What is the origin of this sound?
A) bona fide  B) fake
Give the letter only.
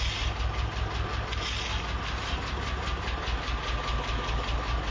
A